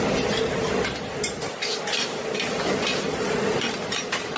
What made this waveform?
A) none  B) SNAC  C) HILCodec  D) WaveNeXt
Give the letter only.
A